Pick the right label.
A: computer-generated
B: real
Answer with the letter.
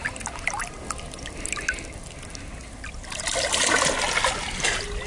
B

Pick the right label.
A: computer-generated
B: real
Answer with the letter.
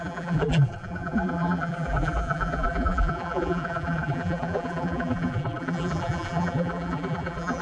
A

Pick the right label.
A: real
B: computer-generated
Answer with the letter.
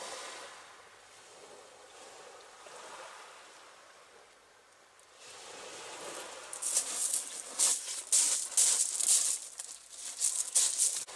A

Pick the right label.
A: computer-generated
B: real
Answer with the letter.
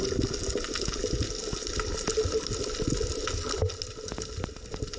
B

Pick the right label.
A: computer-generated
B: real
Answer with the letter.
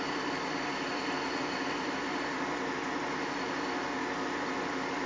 B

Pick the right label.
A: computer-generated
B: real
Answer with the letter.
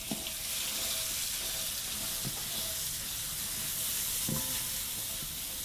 B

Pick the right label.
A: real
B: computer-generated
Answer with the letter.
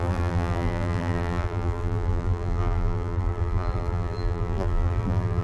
B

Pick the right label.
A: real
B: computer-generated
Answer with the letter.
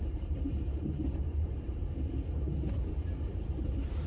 B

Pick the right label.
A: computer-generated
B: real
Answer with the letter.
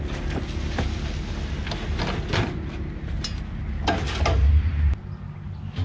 B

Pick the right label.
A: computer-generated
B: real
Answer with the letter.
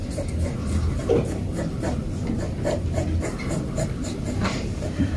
A